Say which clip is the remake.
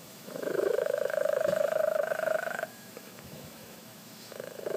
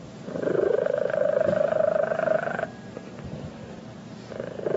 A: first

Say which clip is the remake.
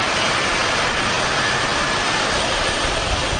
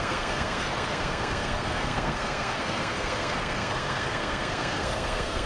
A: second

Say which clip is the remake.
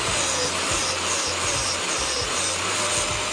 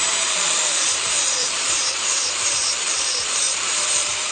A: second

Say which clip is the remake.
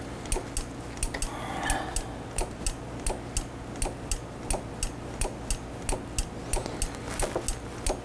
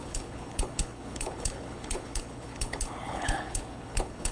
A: second